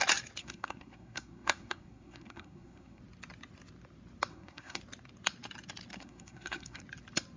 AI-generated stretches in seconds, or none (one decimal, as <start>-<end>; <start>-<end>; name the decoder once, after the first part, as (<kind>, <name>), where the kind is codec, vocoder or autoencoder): 0.4-3.0 (codec, SNAC); 4.3-4.8; 5.9-6.8